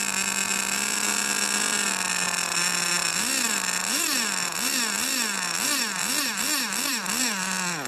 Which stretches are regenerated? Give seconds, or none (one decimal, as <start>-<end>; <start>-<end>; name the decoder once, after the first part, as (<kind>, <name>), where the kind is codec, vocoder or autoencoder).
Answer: 6.0-7.2 (vocoder, BigVGAN v2)